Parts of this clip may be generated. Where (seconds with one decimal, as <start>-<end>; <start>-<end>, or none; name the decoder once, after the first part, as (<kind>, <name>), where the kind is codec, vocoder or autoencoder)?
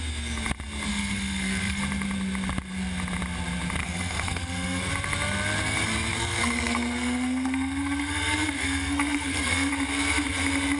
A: 0.9-1.8 (codec, SNAC); 3.8-4.9; 6.1-9.7